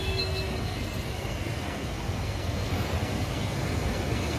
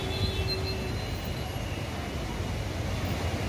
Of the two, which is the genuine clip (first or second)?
second